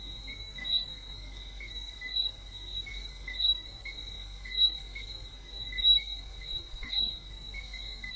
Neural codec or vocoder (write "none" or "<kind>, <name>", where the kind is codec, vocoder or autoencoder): codec, SNAC